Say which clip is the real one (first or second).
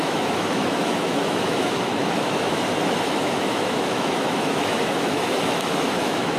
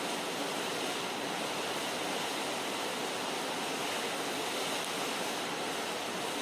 second